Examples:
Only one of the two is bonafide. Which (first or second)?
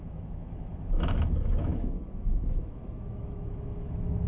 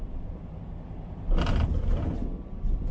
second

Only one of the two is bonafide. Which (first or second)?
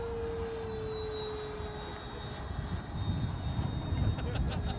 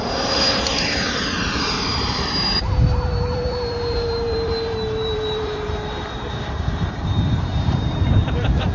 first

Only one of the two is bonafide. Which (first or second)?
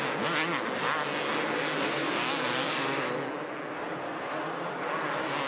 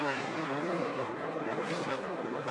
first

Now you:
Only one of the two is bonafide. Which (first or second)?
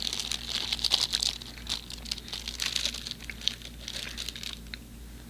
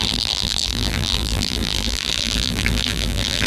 first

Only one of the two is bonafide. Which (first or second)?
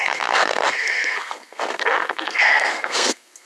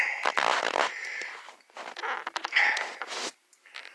second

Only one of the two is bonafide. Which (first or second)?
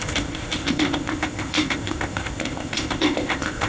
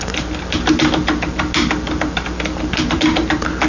second